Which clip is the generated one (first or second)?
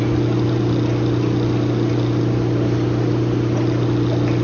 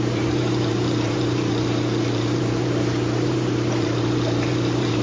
second